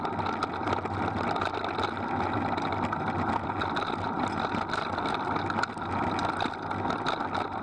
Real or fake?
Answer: real